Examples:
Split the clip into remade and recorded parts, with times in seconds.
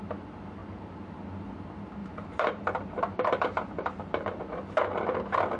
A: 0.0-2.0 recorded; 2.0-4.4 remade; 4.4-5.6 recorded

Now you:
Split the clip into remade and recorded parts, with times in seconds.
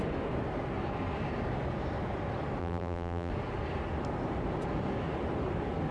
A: 0.0-2.6 recorded; 2.6-3.3 remade; 3.3-5.9 recorded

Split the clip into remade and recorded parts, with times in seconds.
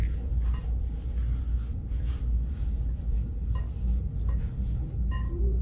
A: 0.0-5.6 recorded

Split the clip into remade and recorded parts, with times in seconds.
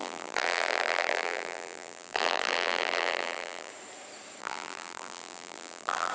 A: 0.0-3.7 remade; 3.7-4.4 recorded; 4.4-6.1 remade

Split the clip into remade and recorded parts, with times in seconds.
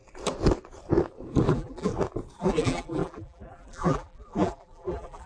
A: 0.0-1.5 recorded; 1.5-1.9 remade; 1.9-2.4 recorded; 2.4-5.3 remade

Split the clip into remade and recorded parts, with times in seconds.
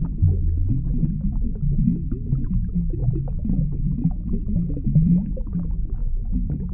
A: 0.0-6.0 recorded; 6.0-6.7 remade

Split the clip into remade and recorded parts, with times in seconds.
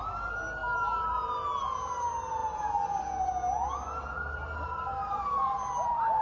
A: 0.0-4.9 recorded; 4.9-6.2 remade